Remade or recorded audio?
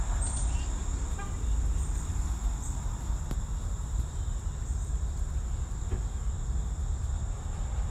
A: recorded